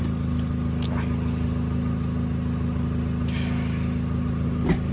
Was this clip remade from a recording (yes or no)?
no